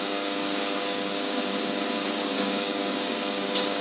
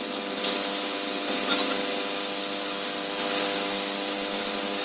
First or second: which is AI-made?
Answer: first